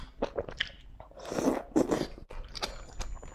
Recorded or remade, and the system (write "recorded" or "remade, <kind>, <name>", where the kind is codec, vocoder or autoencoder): recorded